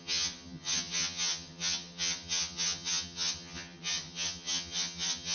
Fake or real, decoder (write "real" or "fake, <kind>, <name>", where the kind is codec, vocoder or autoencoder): fake, vocoder, HiFi-GAN